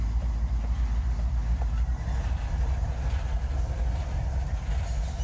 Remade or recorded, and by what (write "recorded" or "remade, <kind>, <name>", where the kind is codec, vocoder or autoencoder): recorded